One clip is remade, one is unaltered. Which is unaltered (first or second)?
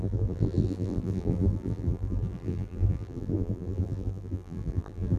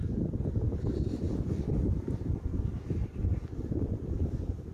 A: second